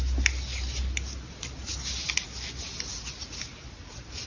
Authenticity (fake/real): real